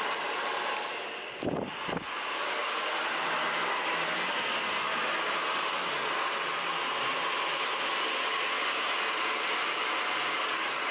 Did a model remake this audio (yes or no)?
no